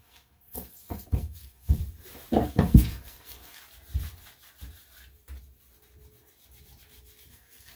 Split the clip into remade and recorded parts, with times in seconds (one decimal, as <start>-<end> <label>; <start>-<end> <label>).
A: 0.0-1.8 remade; 1.8-2.4 recorded; 2.4-3.6 remade; 3.6-7.3 recorded; 7.3-7.8 remade